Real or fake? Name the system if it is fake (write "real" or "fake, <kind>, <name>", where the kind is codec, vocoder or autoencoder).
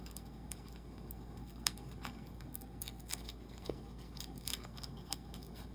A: fake, codec, SNAC